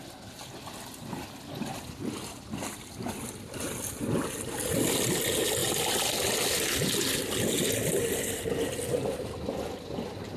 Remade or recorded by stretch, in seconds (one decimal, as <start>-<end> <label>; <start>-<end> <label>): 0.0-10.4 recorded